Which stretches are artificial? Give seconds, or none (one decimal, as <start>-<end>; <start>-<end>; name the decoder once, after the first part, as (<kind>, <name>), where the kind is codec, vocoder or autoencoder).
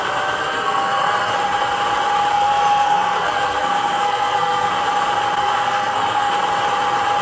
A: 0.4-1.3 (codec, SNAC); 2.3-4.7; 5.4-6.3